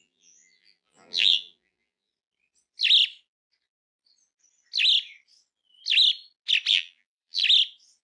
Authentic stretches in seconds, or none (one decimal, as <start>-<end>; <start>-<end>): 2.1-6.7; 7.4-8.0